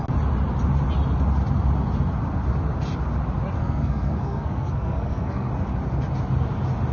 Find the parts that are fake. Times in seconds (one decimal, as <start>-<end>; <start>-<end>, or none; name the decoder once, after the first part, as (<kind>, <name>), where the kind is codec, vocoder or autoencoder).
3.6-5.5 (codec, SNAC)